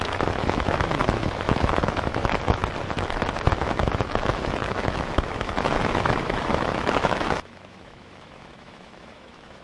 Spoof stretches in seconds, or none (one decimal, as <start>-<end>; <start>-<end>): 0.0-2.6; 3.5-9.6